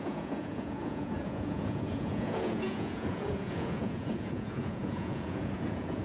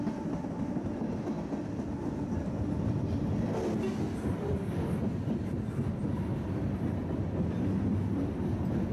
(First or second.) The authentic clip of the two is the second